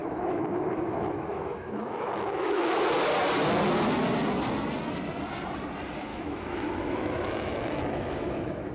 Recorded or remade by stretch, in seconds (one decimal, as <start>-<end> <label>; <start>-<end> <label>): 0.0-2.9 remade; 2.9-6.1 recorded; 6.1-8.7 remade